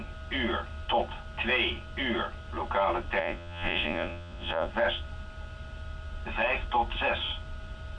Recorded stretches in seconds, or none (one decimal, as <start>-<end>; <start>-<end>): 0.0-3.2; 4.7-8.0

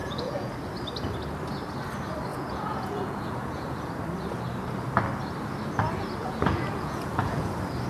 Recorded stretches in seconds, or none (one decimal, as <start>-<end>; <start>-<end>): 0.5-2.3; 3.9-6.2; 7.5-7.9

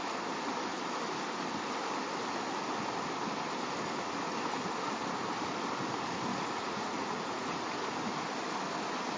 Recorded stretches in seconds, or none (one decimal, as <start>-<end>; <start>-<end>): 0.0-6.3; 7.6-9.2

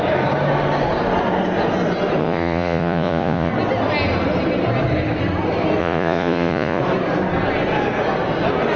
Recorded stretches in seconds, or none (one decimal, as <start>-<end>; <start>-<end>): 0.0-2.2; 3.5-5.8; 6.8-8.8

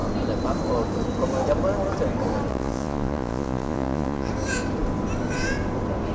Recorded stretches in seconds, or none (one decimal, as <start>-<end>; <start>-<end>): 0.0-2.5; 4.3-6.1